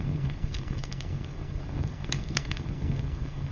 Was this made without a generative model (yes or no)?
no